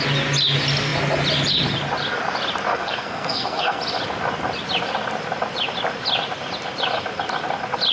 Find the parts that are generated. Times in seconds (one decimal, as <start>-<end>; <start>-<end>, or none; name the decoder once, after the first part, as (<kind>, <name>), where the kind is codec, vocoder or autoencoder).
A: 2.7-3.8 (codec, SNAC)

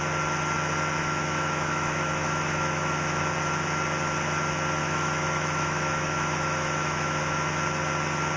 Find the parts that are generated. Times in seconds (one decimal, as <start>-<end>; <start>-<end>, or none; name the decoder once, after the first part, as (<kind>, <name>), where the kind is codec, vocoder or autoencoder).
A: 1.0-3.2 (autoencoder, DAC-VAE); 4.8-7.2

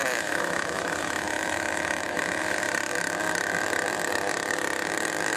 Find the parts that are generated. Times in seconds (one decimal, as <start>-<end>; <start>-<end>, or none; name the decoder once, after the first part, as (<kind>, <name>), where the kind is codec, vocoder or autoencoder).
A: 0.0-2.4 (autoencoder, DAC-VAE)